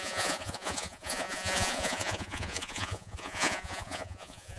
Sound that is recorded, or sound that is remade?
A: remade